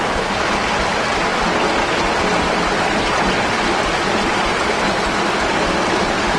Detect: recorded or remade recorded